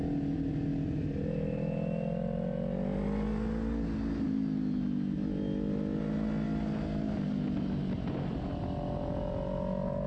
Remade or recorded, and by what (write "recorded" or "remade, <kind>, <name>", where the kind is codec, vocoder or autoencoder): recorded